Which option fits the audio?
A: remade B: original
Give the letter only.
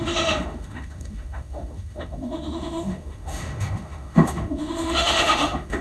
A